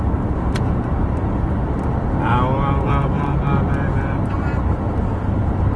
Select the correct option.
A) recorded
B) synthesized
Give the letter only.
A